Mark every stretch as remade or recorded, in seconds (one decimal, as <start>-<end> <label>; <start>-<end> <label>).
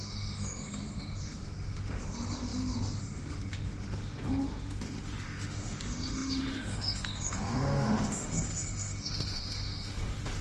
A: 0.0-10.4 remade